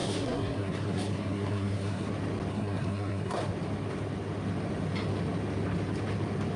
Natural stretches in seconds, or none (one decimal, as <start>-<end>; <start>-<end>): 2.1-2.5; 3.5-6.6